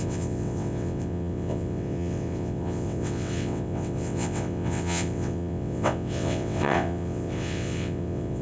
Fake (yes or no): yes